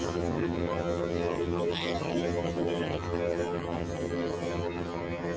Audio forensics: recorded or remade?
remade